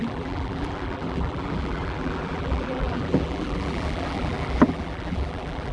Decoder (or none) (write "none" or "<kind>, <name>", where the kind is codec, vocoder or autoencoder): vocoder, BigVGAN v2